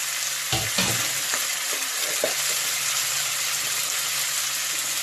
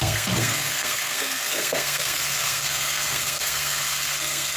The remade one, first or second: second